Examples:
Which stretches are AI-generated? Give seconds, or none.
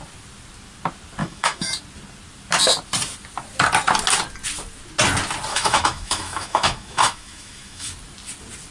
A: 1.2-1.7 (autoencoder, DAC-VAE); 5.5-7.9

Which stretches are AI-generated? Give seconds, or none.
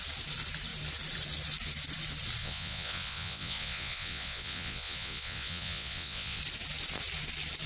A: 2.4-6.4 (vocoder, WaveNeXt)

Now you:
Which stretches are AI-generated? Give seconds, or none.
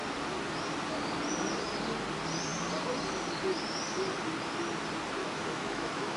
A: 5.2-6.2 (autoencoder, DAC-VAE)